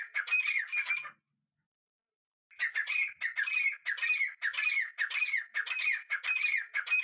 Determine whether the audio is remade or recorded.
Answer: recorded